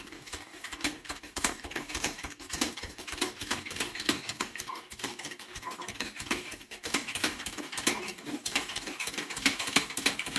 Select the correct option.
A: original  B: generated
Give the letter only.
B